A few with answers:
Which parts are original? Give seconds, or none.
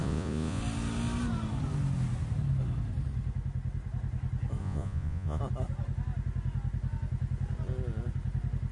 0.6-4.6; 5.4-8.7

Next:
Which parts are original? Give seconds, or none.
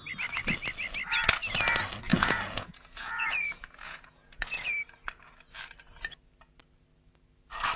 0.0-2.1; 4.7-7.8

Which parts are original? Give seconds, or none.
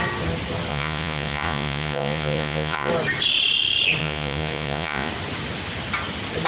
0.0-0.7; 2.9-4.0; 5.1-6.5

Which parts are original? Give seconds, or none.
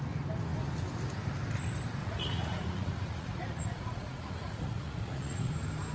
0.0-2.0; 5.5-5.9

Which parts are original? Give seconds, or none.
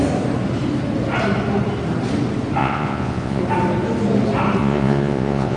0.0-2.6; 3.4-4.6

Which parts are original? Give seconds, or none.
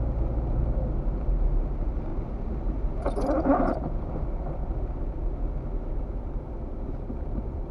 0.0-7.7